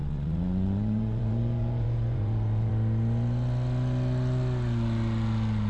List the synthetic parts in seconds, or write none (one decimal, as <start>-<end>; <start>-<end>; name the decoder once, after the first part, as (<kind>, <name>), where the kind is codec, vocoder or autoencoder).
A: 0.0-2.7 (vocoder, Vocos)